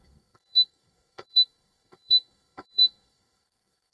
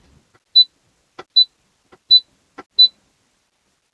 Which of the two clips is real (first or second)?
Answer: second